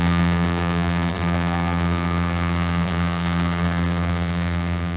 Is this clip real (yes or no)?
no